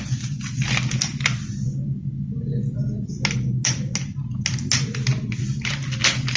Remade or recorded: recorded